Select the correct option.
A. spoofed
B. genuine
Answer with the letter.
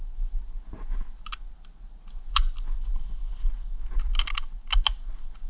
B